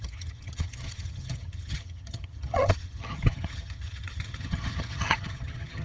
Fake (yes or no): yes